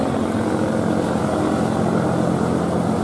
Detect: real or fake real